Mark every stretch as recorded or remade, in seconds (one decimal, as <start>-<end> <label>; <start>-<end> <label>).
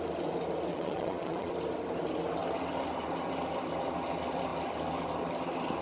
0.0-0.7 recorded; 0.7-1.5 remade; 1.5-5.8 recorded